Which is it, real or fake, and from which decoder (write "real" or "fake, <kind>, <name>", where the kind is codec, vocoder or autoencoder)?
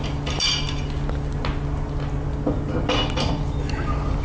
real